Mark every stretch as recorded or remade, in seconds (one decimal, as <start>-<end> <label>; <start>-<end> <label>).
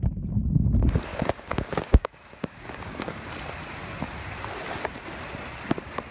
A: 0.0-1.1 recorded; 1.1-3.3 remade; 3.3-6.1 recorded